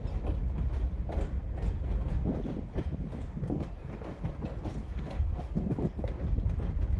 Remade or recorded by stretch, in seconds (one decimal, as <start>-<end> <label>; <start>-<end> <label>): 0.0-1.4 recorded; 1.4-2.4 remade; 2.4-3.1 recorded; 3.1-4.3 remade; 4.3-4.8 recorded; 4.8-6.1 remade; 6.1-7.0 recorded